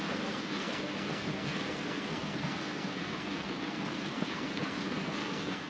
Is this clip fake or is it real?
fake